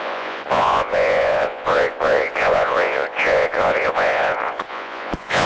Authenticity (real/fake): fake